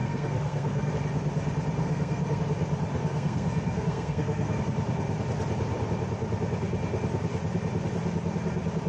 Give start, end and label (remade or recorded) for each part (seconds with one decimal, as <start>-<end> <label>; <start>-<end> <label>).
0.0-0.9 remade; 0.9-1.8 recorded; 1.8-2.4 remade; 2.4-2.9 recorded; 2.9-4.6 remade; 4.6-8.9 recorded